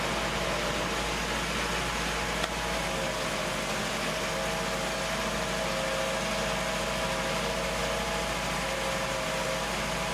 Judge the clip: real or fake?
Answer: real